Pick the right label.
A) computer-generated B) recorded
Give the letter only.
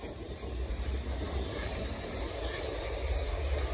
A